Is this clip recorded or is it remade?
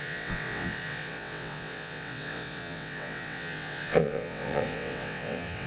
remade